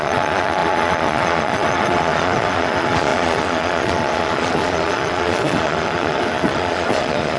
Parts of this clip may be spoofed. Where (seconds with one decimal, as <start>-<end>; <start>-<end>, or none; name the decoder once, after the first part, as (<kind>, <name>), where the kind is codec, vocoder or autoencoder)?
0.0-7.4 (vocoder, Vocos)